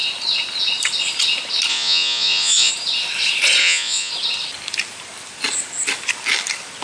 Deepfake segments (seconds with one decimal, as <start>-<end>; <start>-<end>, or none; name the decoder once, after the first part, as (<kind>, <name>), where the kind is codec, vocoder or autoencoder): 1.7-2.7 (vocoder, Vocos); 3.6-4.1